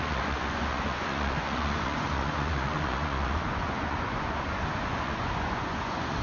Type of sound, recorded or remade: remade